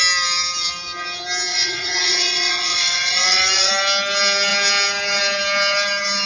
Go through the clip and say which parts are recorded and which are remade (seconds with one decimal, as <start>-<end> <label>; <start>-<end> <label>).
0.0-1.5 recorded; 1.5-3.7 remade; 3.7-6.3 recorded